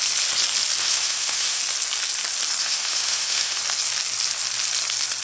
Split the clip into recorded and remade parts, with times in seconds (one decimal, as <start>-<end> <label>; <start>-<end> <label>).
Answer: 0.0-0.8 recorded; 0.8-1.6 remade; 1.6-2.6 recorded; 2.6-3.6 remade; 3.6-5.2 recorded